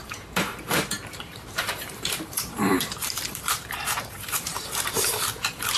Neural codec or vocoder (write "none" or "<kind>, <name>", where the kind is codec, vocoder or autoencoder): vocoder, BigVGAN v2